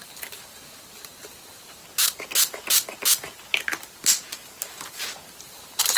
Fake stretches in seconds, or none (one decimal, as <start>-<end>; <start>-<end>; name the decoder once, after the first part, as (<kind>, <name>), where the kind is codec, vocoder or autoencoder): 0.0-1.8 (vocoder, BigVGAN v2); 5.4-6.0